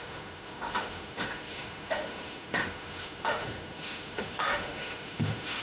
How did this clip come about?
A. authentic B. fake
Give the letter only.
B